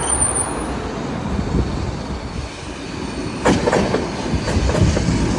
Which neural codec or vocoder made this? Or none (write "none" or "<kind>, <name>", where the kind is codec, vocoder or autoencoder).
none